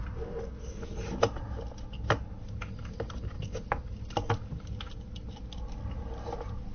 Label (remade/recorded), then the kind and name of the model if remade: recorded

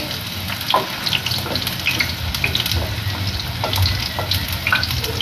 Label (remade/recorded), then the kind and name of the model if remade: recorded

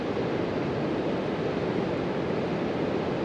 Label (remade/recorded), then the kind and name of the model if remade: recorded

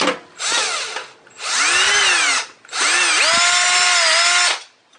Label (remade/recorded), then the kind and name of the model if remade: recorded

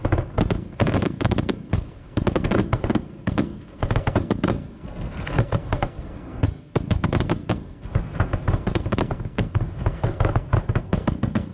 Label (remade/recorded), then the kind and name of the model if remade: remade, codec, SNAC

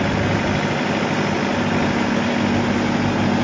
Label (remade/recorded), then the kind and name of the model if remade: recorded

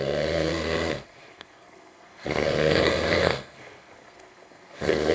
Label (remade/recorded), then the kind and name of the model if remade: remade, codec, SNAC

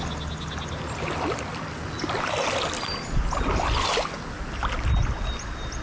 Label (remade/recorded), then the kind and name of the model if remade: recorded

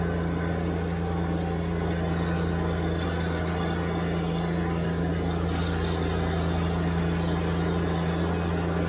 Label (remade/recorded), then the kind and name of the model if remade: recorded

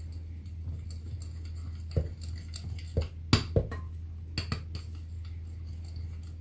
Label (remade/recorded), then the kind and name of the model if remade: recorded